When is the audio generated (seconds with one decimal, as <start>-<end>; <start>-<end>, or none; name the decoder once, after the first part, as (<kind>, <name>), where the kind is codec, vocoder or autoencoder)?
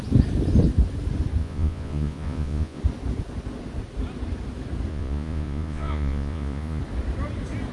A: 1.4-2.8 (vocoder, Vocos); 4.9-6.8